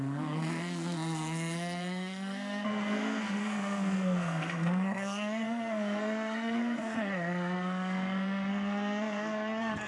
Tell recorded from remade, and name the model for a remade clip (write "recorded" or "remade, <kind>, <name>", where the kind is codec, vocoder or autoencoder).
remade, codec, SNAC